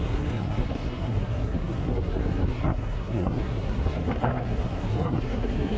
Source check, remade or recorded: remade